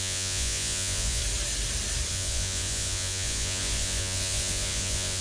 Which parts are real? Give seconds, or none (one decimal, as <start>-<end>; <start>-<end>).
1.2-2.1